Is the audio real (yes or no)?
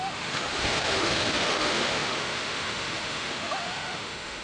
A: no